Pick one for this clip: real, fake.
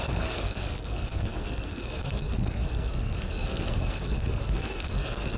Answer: fake